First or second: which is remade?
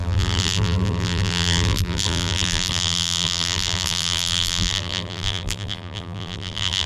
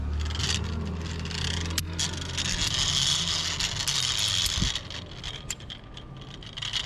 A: first